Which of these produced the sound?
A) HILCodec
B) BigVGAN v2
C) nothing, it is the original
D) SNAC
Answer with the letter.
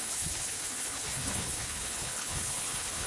A